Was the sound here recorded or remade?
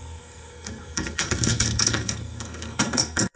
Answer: remade